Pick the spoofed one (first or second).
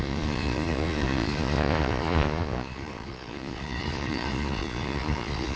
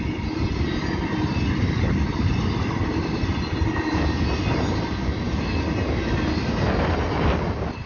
first